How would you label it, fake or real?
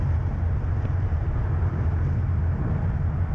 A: fake